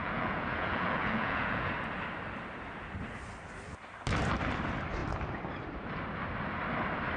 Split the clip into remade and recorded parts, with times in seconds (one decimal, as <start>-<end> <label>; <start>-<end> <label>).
0.0-1.7 remade; 1.7-7.2 recorded